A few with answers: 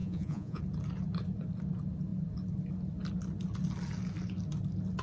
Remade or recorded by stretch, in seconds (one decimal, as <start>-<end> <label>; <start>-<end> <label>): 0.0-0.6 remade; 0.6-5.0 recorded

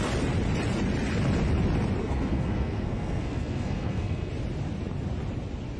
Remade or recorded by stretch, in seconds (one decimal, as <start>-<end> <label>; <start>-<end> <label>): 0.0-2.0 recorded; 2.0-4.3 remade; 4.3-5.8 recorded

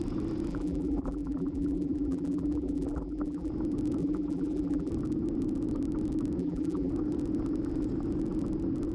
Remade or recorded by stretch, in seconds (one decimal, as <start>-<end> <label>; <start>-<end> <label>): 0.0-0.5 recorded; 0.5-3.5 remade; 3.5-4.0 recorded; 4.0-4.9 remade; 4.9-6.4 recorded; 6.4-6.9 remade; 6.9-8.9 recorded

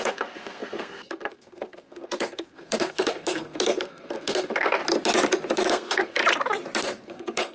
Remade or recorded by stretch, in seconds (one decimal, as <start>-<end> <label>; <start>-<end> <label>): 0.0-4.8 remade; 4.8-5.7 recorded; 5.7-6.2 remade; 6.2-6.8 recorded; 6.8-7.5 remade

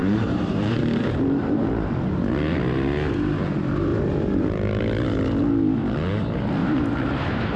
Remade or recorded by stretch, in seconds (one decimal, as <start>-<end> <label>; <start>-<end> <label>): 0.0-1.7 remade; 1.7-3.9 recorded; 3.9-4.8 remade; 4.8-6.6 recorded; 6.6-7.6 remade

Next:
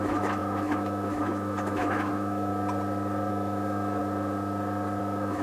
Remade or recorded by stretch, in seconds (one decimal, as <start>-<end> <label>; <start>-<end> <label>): 0.0-2.5 remade; 2.5-3.3 recorded; 3.3-4.0 remade; 4.0-5.0 recorded; 5.0-5.4 remade

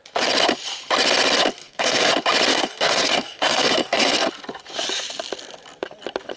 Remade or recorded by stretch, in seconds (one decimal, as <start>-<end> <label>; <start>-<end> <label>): 0.0-1.6 recorded; 1.6-2.1 remade; 2.1-2.5 recorded; 2.5-4.3 remade; 4.3-6.4 recorded

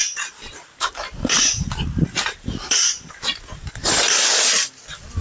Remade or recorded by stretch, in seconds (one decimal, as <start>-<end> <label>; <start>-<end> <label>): 0.0-3.1 remade; 3.1-5.2 recorded